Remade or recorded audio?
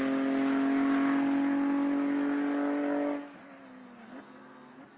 recorded